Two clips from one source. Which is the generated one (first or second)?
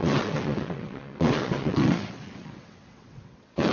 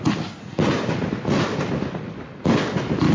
first